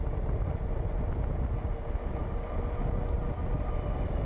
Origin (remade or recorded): recorded